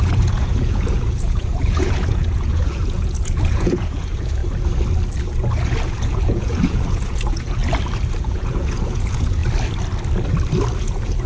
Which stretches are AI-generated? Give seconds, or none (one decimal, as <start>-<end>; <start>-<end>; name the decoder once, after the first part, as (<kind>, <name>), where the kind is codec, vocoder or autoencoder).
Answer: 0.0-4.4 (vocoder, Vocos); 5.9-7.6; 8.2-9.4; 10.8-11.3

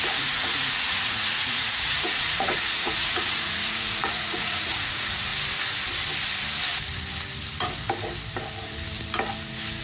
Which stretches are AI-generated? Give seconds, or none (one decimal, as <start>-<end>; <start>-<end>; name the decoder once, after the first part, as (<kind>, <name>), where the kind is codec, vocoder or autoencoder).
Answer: 0.0-5.3 (vocoder, Vocos)

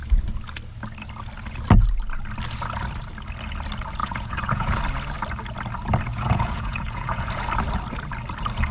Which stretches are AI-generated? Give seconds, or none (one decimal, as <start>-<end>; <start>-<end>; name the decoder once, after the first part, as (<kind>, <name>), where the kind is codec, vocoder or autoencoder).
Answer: 4.0-4.8 (vocoder, Vocos); 6.1-7.3